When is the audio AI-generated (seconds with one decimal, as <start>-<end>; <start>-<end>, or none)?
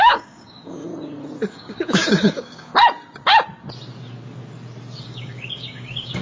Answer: 0.0-0.9; 1.5-2.7; 5.0-6.2